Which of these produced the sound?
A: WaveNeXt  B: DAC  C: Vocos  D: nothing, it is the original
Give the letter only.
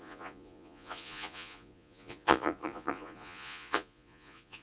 C